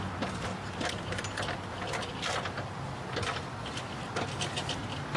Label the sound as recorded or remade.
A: recorded